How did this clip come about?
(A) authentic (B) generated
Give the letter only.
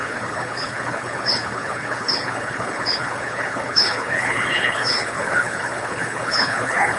B